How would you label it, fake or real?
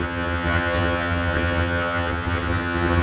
fake